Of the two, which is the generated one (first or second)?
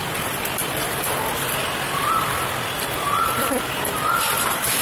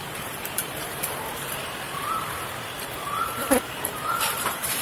second